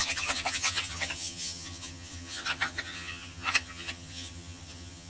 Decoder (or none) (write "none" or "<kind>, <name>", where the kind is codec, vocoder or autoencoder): vocoder, HiFi-GAN